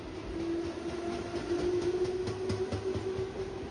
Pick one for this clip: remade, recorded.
recorded